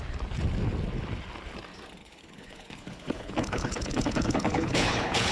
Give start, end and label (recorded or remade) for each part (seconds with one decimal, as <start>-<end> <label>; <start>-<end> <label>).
0.0-2.0 recorded; 2.0-5.3 remade